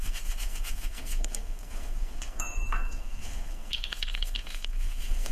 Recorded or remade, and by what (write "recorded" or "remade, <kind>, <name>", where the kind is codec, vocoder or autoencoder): remade, codec, SNAC